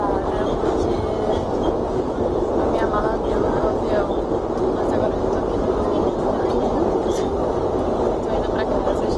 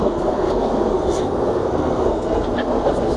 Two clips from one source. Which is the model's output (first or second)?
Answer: second